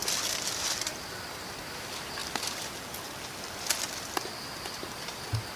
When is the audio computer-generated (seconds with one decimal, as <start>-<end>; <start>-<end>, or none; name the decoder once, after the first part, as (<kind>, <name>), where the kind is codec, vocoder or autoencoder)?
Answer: 0.0-1.5 (vocoder, BigVGAN v2); 2.2-4.9